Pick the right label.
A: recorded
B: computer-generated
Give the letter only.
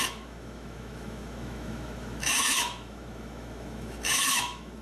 B